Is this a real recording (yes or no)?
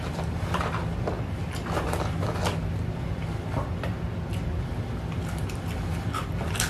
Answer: yes